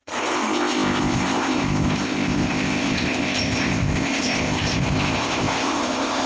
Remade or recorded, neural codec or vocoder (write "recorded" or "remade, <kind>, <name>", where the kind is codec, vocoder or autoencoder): remade, codec, ZipCodec